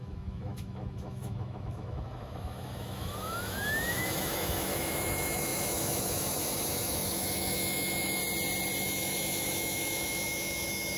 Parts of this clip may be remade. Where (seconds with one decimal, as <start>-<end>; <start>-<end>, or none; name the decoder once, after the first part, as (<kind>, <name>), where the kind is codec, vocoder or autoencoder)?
0.0-8.2 (autoencoder, DAC-VAE); 8.8-11.0